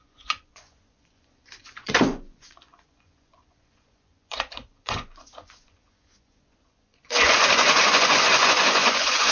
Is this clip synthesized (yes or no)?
yes